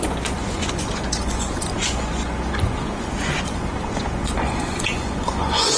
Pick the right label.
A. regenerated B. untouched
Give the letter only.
A